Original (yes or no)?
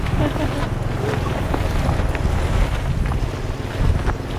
yes